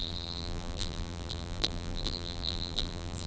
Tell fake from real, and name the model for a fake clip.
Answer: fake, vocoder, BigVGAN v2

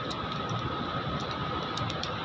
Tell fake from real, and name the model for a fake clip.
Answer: fake, vocoder, BigVGAN v2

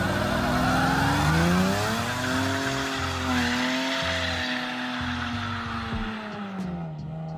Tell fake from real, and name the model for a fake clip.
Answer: real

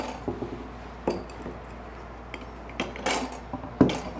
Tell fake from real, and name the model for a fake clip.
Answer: real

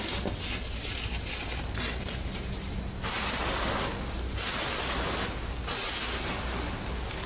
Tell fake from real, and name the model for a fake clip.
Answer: real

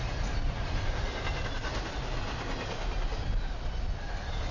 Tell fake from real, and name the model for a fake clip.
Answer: real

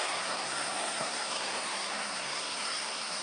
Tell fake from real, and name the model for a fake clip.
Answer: fake, codec, SNAC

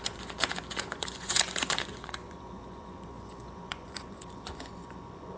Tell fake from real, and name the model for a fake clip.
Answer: fake, vocoder, Vocos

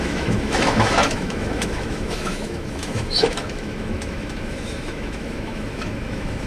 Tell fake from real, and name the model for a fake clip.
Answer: fake, autoencoder, DAC-VAE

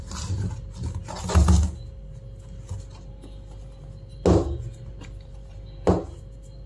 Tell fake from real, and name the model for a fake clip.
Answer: real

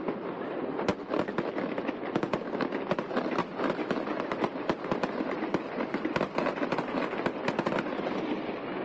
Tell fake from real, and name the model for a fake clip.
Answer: real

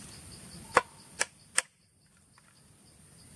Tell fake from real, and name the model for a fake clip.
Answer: real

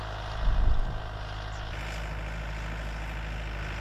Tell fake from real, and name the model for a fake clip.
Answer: real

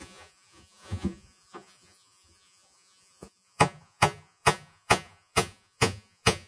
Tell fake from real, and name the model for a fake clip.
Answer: fake, vocoder, Vocos